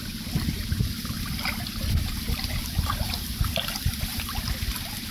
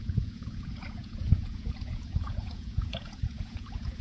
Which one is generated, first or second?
second